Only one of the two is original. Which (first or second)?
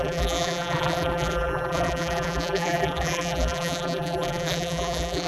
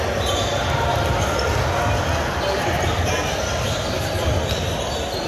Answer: second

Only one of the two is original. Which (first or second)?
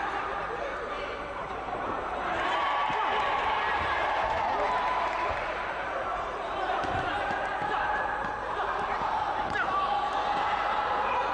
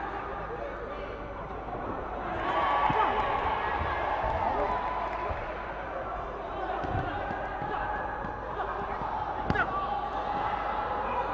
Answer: second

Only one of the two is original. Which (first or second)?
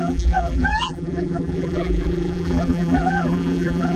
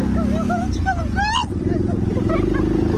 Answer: second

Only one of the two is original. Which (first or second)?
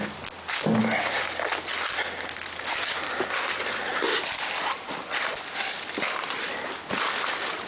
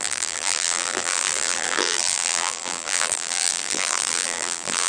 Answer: first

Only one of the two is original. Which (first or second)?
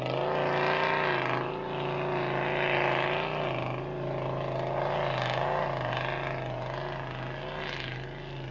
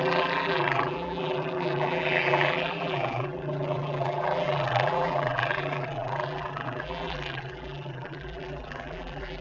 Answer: first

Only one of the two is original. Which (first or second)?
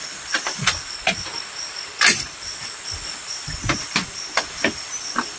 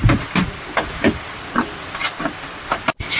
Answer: second